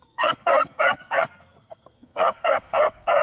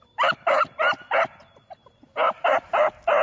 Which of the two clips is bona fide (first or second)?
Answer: second